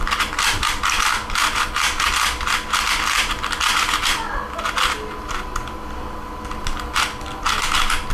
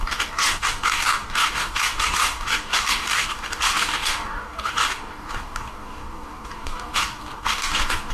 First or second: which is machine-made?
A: second